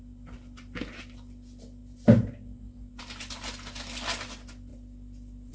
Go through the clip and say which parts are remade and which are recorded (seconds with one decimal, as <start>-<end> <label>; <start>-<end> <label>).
0.0-5.5 recorded